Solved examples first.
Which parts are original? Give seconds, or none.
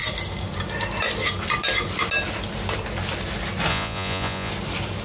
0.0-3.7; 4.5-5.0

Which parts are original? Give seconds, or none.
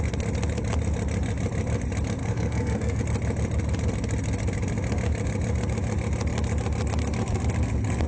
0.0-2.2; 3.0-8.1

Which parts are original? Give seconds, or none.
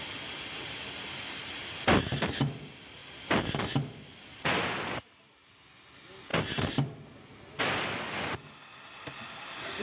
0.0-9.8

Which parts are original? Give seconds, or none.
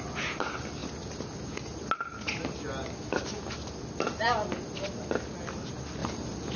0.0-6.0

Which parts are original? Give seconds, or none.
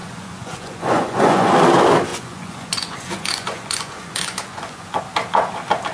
1.5-2.1; 5.0-5.9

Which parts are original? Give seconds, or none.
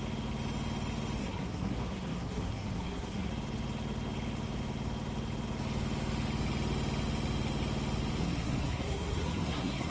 0.0-1.2; 3.3-8.2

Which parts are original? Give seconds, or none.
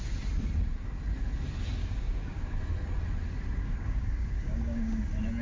0.0-1.8; 2.6-3.6; 5.0-5.4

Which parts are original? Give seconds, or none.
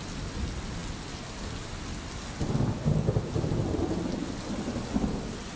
0.0-5.6